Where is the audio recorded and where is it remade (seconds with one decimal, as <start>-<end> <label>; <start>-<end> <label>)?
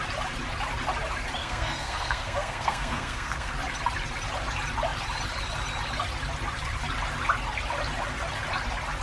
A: 0.0-1.4 recorded; 1.4-3.5 remade; 3.5-9.0 recorded